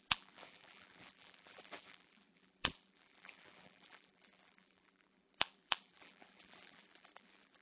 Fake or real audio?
fake